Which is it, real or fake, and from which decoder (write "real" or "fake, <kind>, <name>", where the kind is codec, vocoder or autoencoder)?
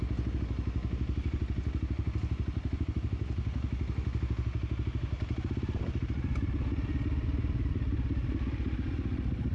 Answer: real